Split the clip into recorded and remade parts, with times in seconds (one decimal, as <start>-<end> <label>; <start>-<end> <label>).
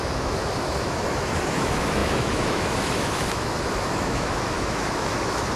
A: 0.0-5.6 remade